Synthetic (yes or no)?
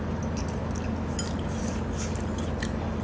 no